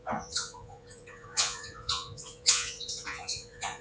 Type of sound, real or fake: fake